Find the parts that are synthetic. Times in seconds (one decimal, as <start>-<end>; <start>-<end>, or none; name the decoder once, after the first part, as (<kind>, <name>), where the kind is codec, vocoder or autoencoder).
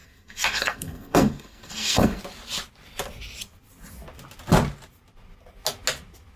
0.0-2.2 (codec, SNAC)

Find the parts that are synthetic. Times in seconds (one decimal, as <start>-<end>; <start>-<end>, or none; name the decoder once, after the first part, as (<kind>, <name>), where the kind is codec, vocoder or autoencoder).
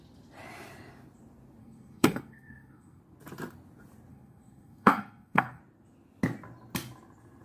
1.6-3.0 (codec, SNAC); 4.1-5.6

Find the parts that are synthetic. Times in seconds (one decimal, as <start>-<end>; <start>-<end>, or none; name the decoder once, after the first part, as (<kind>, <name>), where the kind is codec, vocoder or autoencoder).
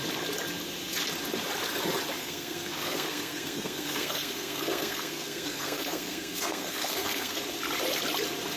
2.2-7.4 (codec, SNAC)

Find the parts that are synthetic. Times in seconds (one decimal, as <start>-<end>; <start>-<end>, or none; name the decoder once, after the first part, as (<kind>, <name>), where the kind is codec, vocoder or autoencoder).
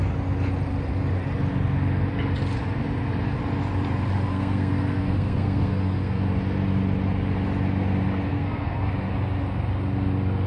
4.3-6.2 (codec, SNAC); 8.3-8.9